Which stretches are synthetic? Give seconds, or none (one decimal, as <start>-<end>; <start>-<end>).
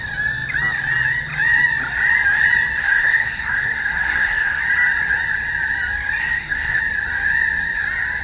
2.8-4.6; 6.2-6.8